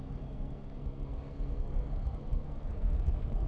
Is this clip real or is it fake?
fake